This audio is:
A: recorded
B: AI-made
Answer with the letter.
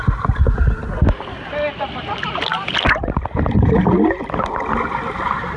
A